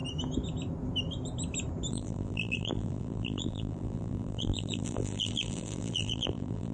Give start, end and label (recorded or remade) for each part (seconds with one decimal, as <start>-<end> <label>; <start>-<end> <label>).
0.0-1.9 recorded; 1.9-6.7 remade